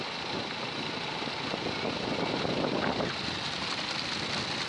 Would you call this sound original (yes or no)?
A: yes